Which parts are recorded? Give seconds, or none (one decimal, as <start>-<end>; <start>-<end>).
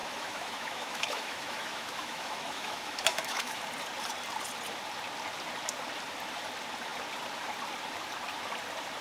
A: 3.6-9.0